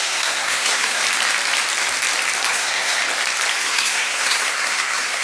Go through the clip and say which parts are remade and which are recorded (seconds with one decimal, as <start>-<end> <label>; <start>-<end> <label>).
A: 0.0-1.0 remade; 1.0-2.5 recorded; 2.5-3.0 remade; 3.0-3.5 recorded; 3.5-5.2 remade